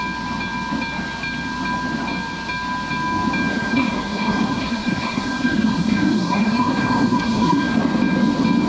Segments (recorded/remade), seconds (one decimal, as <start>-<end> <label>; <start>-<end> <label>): 0.0-3.5 recorded; 3.5-7.8 remade; 7.8-8.7 recorded